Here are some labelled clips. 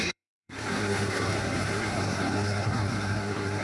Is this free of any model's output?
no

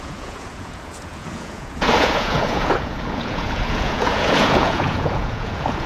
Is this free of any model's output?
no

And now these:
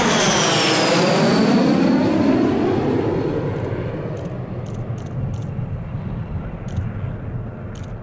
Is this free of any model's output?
yes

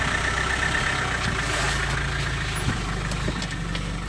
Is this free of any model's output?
yes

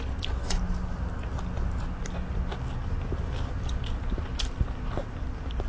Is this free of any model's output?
yes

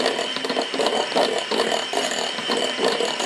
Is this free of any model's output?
no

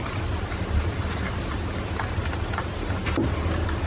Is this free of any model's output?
yes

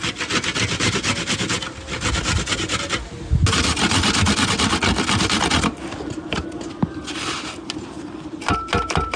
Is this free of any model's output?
yes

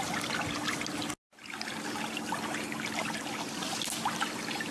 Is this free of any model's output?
yes